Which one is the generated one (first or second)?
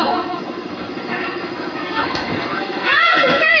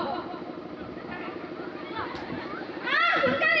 first